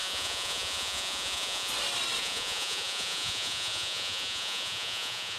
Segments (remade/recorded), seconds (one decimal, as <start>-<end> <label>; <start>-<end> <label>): 0.0-1.7 remade; 1.7-2.2 recorded; 2.2-5.4 remade